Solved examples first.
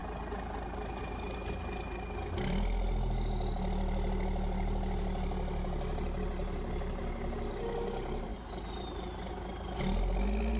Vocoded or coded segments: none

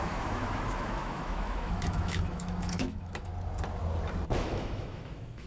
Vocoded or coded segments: 0.0-3.3 (autoencoder, DAC-VAE); 4.4-5.5

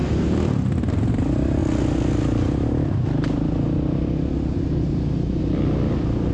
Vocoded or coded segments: 0.0-1.6 (vocoder, BigVGAN v2); 5.4-6.3

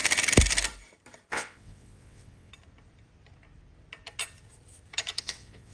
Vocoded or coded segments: 1.3-2.5 (vocoder, WaveNeXt); 5.2-5.7

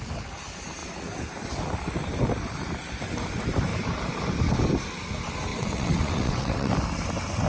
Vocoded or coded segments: 5.5-6.7 (vocoder, WaveNeXt)